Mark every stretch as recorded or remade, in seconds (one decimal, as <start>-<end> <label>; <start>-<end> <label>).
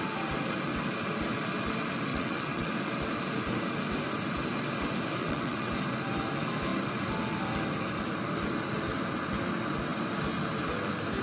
0.0-2.1 recorded; 2.1-2.7 remade; 2.7-5.2 recorded; 5.2-5.7 remade; 5.7-11.2 recorded